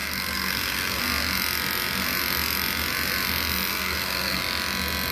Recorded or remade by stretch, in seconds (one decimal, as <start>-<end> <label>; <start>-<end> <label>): 0.0-1.0 remade; 1.0-3.7 recorded; 3.7-4.4 remade; 4.4-5.1 recorded